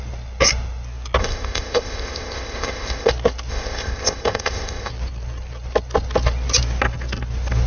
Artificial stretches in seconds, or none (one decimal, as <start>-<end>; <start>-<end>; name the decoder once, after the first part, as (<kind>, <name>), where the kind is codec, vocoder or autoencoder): 1.2-3.1 (codec, ZipCodec); 3.5-4.9